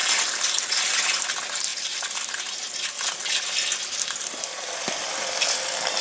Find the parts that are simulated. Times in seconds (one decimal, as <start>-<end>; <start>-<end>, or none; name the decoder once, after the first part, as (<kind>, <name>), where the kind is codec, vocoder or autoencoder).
none